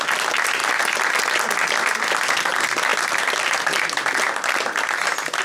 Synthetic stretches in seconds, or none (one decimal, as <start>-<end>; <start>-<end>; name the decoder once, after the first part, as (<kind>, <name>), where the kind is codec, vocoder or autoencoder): none